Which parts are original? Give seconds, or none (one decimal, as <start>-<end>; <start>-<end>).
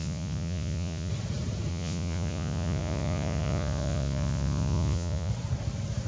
1.1-1.7; 5.3-6.1